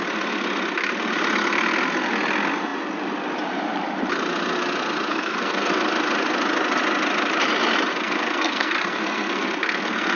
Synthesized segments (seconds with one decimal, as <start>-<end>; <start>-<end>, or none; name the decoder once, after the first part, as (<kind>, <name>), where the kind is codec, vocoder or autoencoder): 5.1-5.8 (codec, SNAC); 7.9-10.2